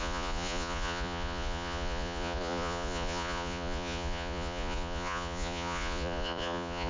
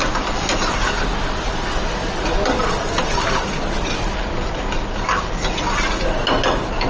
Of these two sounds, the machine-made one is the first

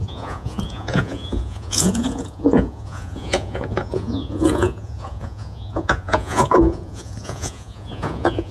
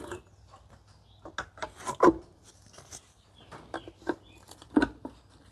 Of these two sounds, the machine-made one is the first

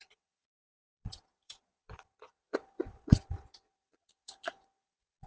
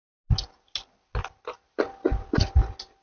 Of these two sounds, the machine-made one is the first